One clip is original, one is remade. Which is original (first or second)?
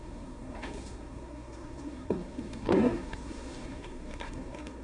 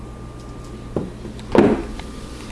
second